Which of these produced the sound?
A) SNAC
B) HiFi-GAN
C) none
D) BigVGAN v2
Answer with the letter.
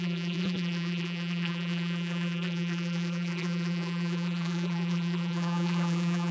D